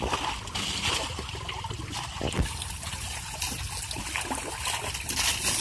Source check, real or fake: real